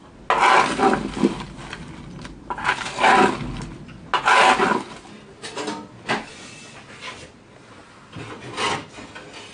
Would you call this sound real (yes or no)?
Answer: yes